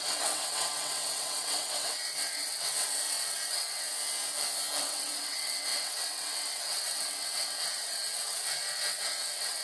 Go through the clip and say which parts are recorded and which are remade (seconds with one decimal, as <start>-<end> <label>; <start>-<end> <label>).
0.0-3.9 remade; 3.9-4.8 recorded; 4.8-9.6 remade